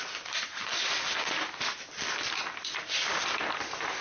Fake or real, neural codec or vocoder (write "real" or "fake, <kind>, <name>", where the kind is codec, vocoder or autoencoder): real